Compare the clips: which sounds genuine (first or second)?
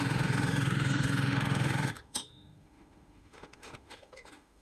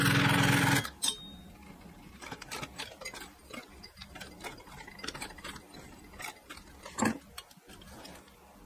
second